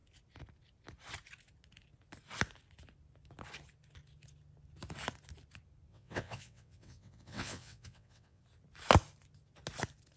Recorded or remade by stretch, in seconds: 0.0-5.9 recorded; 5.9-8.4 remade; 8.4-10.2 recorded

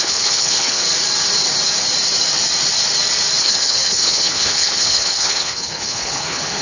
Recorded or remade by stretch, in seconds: 0.0-0.8 remade; 0.8-3.4 recorded; 3.4-6.6 remade

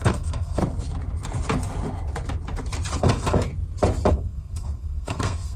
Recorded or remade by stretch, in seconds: 0.0-0.6 remade; 0.6-3.0 recorded; 3.0-3.5 remade; 3.5-4.1 recorded; 4.1-5.6 remade

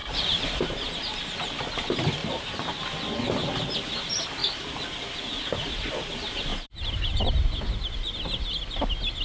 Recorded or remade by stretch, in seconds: 0.0-0.6 remade; 0.6-2.2 recorded; 2.2-2.8 remade; 2.8-6.5 recorded; 6.5-7.2 remade; 7.2-9.2 recorded

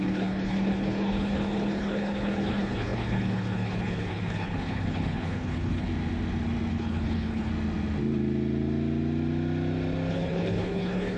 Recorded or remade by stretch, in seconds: 0.0-5.9 remade; 5.9-6.7 recorded; 6.7-7.5 remade; 7.5-10.1 recorded; 10.1-11.2 remade

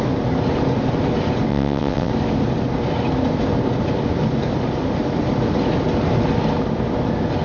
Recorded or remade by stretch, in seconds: 0.0-1.5 recorded; 1.5-2.1 remade; 2.1-7.4 recorded

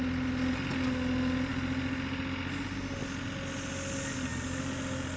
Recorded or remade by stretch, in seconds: 0.0-5.2 recorded

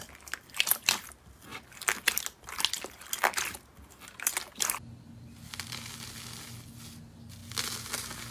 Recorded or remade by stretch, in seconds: 0.0-8.3 recorded